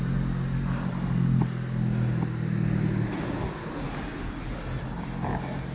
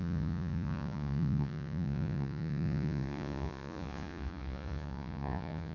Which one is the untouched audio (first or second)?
first